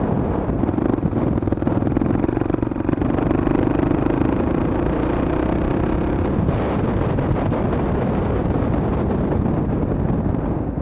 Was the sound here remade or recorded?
recorded